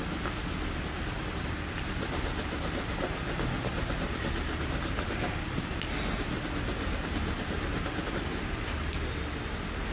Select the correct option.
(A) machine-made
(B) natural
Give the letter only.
B